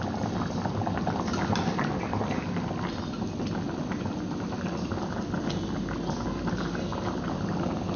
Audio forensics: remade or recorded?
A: recorded